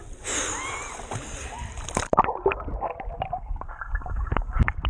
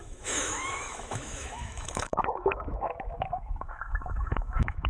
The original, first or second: first